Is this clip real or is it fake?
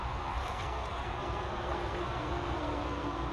fake